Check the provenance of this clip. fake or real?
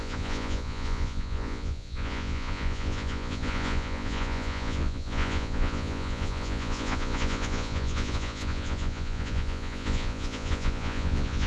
fake